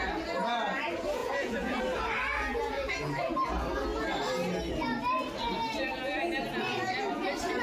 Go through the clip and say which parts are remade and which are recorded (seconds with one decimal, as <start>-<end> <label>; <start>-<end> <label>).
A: 0.0-1.2 recorded; 1.2-1.8 remade; 1.8-7.6 recorded